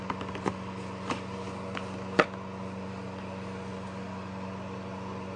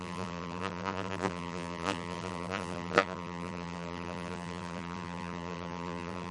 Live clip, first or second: first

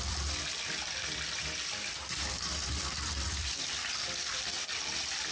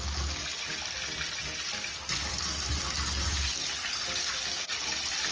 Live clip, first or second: second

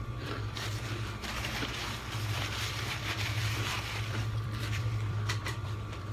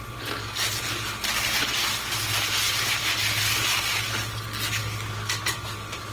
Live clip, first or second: second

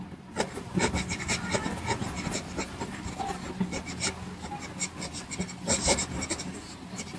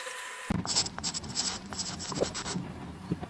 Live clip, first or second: first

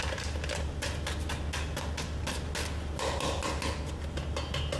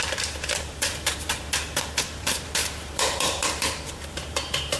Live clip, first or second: first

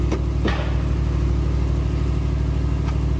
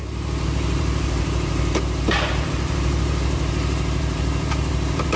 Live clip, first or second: first